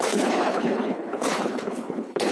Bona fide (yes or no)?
no